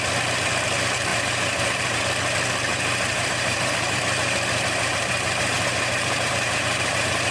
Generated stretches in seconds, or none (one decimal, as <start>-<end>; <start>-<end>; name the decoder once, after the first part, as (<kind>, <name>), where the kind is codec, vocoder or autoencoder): 1.1-2.0 (vocoder, BigVGAN v2); 2.7-7.3

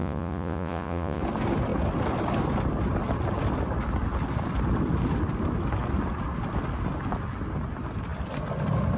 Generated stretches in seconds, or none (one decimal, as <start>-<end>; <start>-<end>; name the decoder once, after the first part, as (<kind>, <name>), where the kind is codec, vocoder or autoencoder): 0.0-1.2 (vocoder, Vocos)

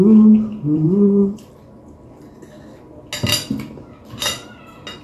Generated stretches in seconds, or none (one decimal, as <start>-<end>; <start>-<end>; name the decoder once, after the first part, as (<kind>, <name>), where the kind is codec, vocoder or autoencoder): 0.5-1.5 (vocoder, BigVGAN v2)

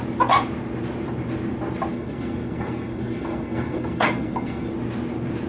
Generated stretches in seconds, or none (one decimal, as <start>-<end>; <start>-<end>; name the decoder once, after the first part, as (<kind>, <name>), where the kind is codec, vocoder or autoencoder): 1.9-4.7 (codec, SNAC)

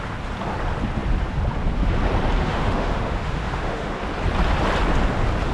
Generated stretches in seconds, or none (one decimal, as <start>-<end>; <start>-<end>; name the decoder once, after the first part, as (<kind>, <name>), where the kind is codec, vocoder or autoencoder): 2.4-4.0 (autoencoder, DAC-VAE)

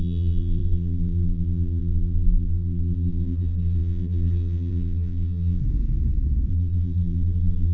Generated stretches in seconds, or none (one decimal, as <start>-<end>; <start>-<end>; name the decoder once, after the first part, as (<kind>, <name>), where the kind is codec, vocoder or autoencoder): 0.0-5.6 (vocoder, BigVGAN v2); 6.5-7.7

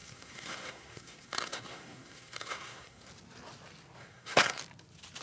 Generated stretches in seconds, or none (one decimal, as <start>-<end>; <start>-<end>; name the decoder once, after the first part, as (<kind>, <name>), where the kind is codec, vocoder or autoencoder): 0.0-3.1 (codec, SNAC); 4.0-4.6

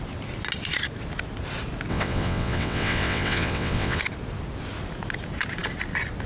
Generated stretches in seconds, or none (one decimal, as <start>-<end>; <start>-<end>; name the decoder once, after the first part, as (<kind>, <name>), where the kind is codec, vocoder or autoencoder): 1.9-4.0 (vocoder, WaveNeXt)